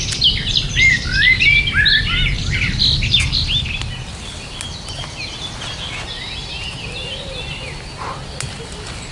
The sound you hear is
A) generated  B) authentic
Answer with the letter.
B